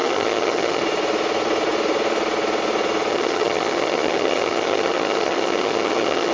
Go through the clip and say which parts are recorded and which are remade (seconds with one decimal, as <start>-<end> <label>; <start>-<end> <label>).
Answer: 0.0-0.8 remade; 0.8-3.1 recorded; 3.1-6.3 remade